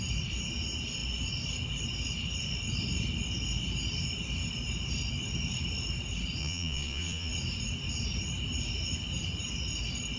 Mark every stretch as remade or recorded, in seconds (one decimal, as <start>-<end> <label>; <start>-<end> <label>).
0.0-6.4 recorded; 6.4-7.3 remade; 7.3-10.2 recorded